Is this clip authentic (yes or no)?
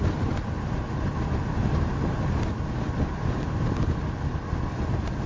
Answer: yes